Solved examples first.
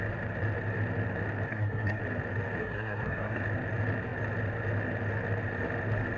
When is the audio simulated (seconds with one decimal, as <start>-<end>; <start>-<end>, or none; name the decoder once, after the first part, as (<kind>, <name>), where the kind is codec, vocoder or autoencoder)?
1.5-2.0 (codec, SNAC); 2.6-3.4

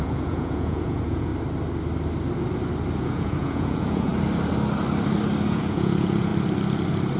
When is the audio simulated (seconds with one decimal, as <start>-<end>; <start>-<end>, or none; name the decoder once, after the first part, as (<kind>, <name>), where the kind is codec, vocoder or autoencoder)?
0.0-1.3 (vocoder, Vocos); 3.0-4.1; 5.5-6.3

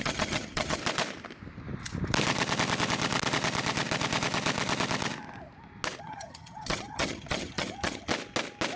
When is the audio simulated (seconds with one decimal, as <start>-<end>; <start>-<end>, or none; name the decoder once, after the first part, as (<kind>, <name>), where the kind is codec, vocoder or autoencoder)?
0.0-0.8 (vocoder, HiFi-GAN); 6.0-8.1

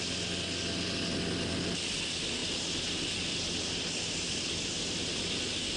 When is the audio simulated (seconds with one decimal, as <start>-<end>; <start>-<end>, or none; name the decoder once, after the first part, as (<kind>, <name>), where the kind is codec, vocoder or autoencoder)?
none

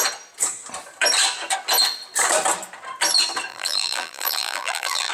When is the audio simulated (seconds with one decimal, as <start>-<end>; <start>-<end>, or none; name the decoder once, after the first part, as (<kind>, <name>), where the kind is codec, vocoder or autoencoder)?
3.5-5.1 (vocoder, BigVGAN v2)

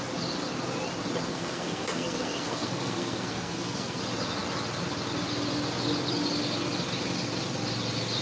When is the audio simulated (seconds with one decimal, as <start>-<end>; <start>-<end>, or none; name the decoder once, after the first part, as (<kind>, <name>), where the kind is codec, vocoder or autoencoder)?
1.3-4.0 (codec, SNAC)